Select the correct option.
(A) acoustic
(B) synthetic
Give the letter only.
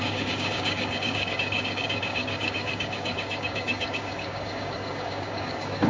B